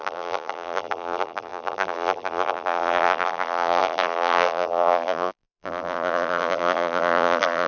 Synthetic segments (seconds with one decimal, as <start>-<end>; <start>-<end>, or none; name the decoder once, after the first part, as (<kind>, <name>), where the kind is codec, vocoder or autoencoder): 0.0-7.7 (vocoder, BigVGAN v2)